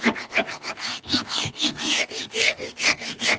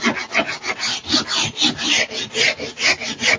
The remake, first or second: first